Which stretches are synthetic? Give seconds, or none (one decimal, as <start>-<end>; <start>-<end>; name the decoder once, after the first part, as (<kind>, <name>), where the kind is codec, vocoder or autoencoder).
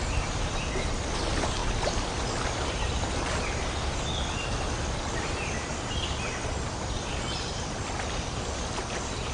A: none